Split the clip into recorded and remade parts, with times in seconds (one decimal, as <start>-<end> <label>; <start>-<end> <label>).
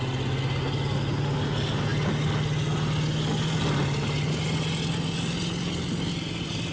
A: 0.0-6.7 recorded